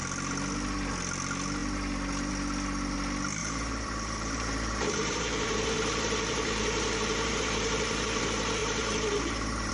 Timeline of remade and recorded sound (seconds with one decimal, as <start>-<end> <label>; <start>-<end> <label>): 0.0-3.4 recorded; 3.4-8.2 remade; 8.2-8.6 recorded; 8.6-9.7 remade